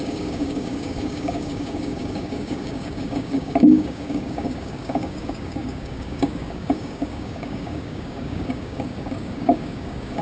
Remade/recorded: remade